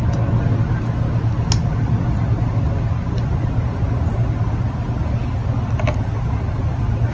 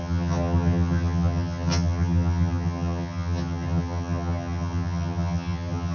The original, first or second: first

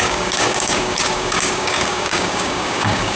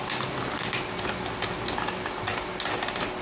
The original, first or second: second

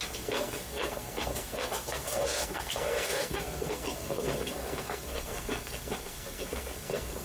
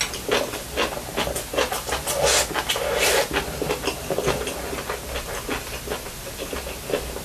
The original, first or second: second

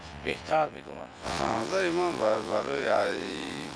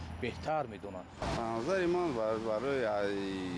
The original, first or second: second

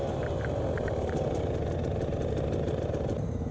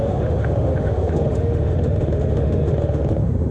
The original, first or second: first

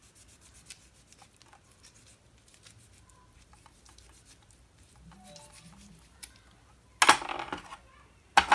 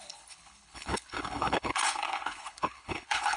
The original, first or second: first